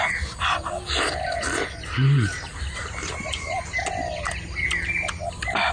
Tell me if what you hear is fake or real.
real